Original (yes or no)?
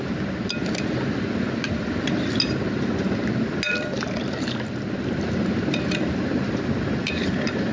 yes